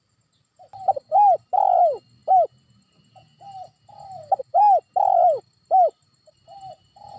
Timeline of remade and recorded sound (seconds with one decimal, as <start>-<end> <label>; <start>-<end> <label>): 0.0-7.2 recorded